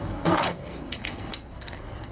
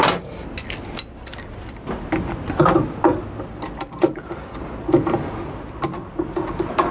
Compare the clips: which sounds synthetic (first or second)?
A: first